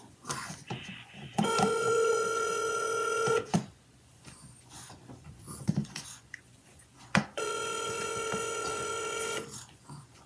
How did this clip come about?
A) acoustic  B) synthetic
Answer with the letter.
B